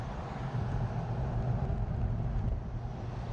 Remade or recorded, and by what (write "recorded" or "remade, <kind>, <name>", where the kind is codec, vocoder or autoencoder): recorded